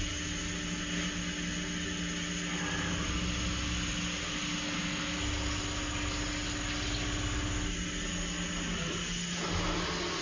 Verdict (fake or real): real